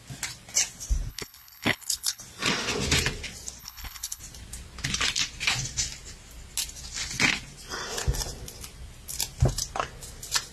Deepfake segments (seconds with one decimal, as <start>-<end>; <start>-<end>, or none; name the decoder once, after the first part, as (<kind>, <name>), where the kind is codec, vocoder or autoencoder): 1.1-2.2 (codec, HILCodec); 3.6-4.2